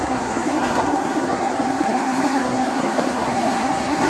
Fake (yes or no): yes